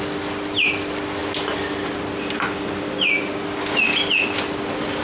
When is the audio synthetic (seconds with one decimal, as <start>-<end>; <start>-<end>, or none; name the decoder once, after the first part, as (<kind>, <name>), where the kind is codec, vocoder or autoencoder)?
none